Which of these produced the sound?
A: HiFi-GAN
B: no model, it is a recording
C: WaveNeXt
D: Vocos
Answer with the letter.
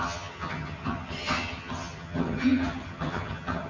A